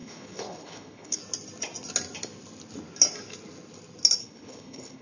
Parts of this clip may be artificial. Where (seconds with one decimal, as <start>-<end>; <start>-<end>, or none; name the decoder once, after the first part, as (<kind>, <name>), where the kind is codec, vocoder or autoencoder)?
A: 0.0-1.2 (codec, HILCodec); 4.2-5.0